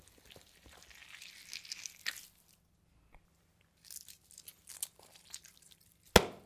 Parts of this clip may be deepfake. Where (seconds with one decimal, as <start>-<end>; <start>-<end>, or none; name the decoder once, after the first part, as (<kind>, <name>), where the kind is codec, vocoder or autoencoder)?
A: none

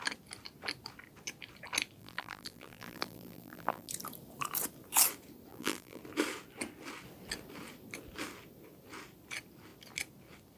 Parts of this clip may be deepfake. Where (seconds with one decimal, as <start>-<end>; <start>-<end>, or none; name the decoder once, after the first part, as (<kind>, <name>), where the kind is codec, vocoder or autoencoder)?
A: 2.0-3.9 (vocoder, BigVGAN v2); 5.5-6.0

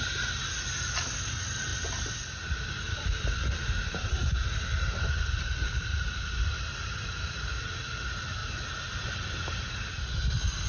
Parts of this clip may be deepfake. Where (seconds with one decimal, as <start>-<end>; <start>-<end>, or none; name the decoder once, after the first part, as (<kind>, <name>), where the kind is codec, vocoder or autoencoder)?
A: 1.7-2.2 (vocoder, BigVGAN v2); 5.6-6.3; 8.4-9.4